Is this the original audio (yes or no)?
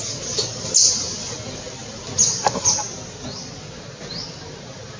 yes